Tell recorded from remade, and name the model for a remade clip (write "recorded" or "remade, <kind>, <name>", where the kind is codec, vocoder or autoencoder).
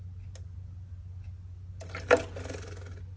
recorded